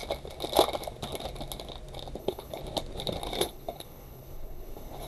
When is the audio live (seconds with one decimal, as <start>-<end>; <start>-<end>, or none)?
0.0-2.2; 2.6-3.4